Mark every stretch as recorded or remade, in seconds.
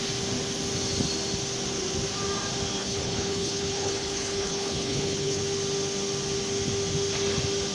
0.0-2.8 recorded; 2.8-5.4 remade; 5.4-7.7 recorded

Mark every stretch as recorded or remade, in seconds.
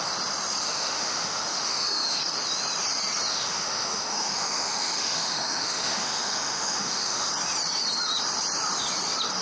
0.0-0.6 recorded; 0.6-2.2 remade; 2.2-3.3 recorded; 3.3-7.3 remade; 7.3-9.4 recorded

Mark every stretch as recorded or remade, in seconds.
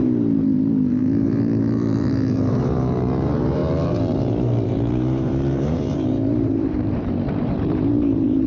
0.0-0.5 remade; 0.5-1.0 recorded; 1.0-8.5 remade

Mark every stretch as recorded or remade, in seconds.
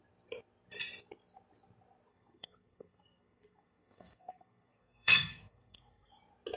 0.0-2.1 recorded; 2.1-6.1 remade; 6.1-6.6 recorded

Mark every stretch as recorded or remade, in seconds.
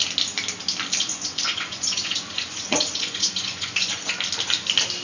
0.0-1.1 recorded; 1.1-4.1 remade; 4.1-5.0 recorded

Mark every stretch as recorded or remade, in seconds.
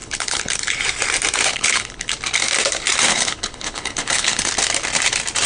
0.0-0.8 remade; 0.8-1.5 recorded; 1.5-2.1 remade; 2.1-3.1 recorded; 3.1-4.5 remade; 4.5-5.5 recorded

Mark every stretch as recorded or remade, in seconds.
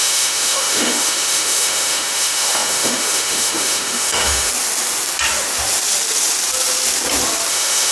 0.0-4.5 remade; 4.5-7.5 recorded; 7.5-7.9 remade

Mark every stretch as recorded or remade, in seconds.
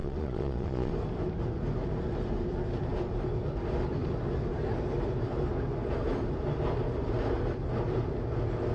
0.0-0.9 remade; 0.9-8.7 recorded